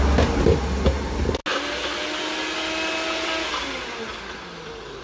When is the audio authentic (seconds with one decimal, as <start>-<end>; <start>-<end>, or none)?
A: 0.0-5.0